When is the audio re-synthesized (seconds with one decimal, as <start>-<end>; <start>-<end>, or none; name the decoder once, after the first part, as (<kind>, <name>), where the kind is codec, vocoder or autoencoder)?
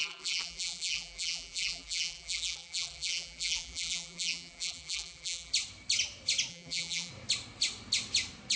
0.0-5.5 (vocoder, BigVGAN v2); 6.5-7.1